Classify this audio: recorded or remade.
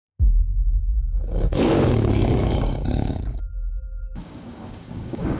remade